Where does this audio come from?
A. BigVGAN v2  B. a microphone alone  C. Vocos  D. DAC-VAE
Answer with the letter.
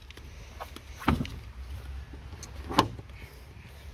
B